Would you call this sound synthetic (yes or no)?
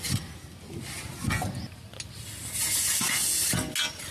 no